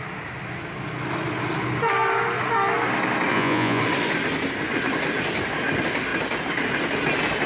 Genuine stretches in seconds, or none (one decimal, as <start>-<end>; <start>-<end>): 0.0-3.3; 3.8-7.5